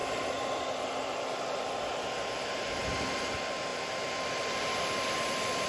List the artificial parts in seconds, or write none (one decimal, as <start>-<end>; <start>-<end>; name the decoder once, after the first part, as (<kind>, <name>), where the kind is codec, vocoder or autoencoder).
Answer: 0.0-2.7 (vocoder, BigVGAN v2); 3.7-4.6